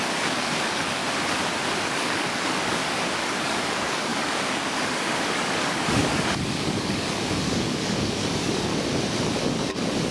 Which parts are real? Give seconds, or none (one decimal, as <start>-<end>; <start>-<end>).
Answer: 1.0-1.8; 8.7-9.3

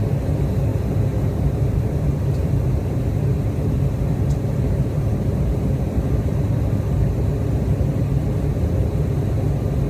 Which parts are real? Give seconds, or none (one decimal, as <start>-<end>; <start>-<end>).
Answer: 0.0-0.7; 5.8-7.7; 8.2-9.9

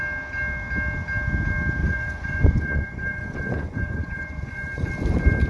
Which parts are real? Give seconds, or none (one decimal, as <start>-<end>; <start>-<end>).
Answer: 0.0-1.8; 4.9-5.5

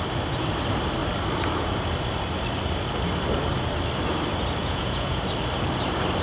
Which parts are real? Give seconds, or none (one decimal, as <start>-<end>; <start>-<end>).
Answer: 0.0-4.6; 5.2-6.2

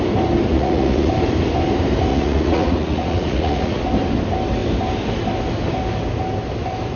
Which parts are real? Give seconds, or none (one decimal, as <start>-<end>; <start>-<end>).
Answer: 0.0-0.5; 1.1-2.1; 3.8-7.0

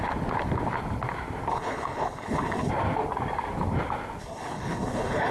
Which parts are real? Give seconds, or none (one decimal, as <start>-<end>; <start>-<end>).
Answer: 0.0-1.5; 2.7-4.2

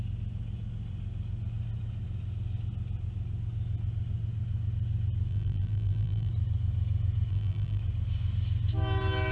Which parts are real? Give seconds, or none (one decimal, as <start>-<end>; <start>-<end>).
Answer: 0.0-5.3; 6.3-7.3; 7.8-9.3